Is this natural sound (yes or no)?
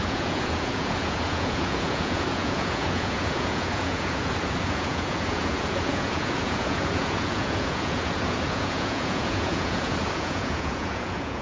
no